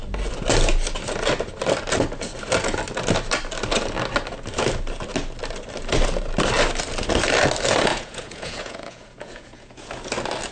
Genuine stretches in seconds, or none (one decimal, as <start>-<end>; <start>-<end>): 0.0-7.9; 9.9-10.5